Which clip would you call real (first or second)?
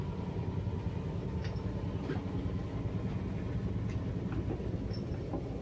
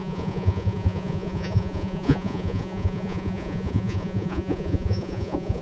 first